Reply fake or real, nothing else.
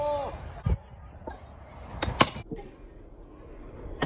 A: real